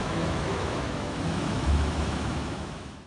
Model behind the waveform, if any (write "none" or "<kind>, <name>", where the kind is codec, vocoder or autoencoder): autoencoder, DAC-VAE